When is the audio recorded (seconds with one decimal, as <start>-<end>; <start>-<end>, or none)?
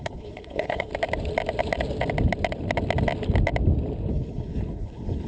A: 0.9-4.1